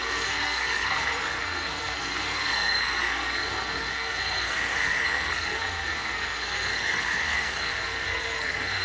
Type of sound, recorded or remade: remade